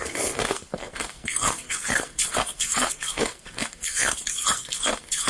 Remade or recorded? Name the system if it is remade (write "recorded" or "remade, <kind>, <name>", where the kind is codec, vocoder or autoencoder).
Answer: remade, codec, SNAC